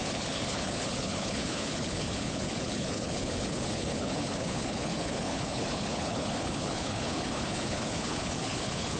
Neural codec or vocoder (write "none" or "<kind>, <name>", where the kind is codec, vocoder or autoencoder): codec, HILCodec